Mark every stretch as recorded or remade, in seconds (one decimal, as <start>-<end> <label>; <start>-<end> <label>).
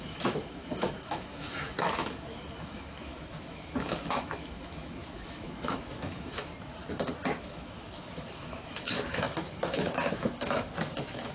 0.0-6.5 remade; 6.5-7.4 recorded; 7.4-11.3 remade